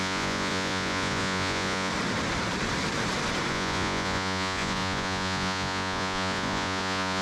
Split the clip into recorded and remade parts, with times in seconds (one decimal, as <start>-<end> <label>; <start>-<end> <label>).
0.0-1.9 remade; 1.9-3.5 recorded; 3.5-7.2 remade